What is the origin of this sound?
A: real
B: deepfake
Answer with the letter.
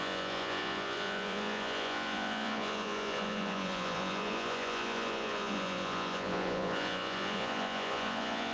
B